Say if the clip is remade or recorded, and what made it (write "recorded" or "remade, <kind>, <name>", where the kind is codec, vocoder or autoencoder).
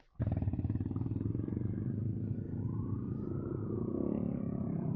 recorded